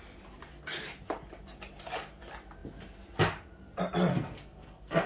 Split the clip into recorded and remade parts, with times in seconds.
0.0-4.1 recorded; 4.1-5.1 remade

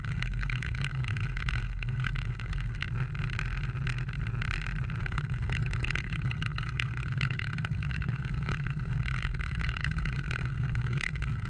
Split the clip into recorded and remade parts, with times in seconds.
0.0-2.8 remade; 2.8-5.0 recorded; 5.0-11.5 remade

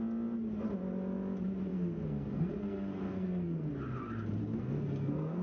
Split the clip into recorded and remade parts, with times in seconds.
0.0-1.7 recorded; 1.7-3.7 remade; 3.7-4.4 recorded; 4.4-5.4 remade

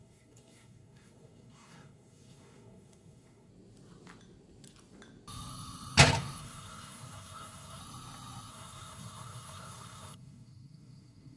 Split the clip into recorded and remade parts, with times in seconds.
0.0-3.5 remade; 3.5-6.4 recorded; 6.4-7.8 remade; 7.8-8.5 recorded; 8.5-11.4 remade